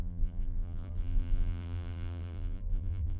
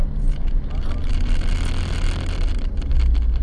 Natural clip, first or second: second